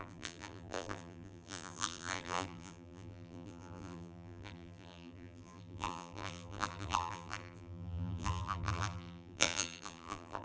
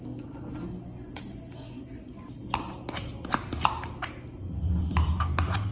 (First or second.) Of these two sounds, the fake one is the first